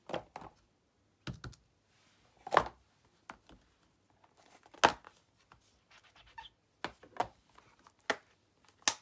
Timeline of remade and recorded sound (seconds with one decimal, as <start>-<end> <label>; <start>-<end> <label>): 0.0-9.0 recorded